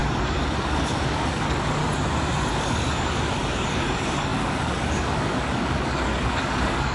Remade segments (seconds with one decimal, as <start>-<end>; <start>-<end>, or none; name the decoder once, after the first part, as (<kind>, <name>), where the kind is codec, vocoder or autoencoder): 0.0-1.8 (codec, DAC); 2.5-6.9